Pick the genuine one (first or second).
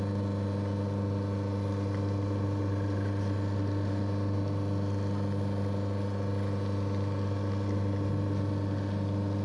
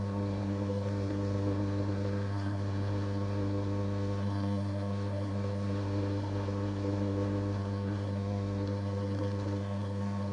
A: first